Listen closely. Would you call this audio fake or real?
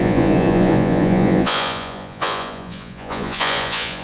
fake